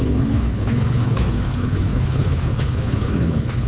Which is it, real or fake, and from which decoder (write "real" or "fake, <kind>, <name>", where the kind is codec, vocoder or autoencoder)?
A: fake, codec, HILCodec